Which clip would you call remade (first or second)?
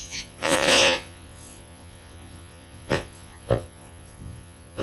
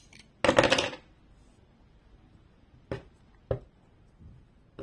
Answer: first